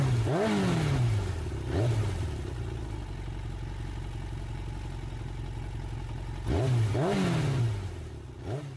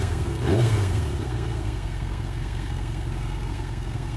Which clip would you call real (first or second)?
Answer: first